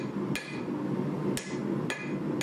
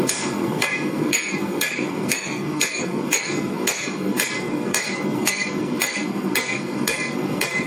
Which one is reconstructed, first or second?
second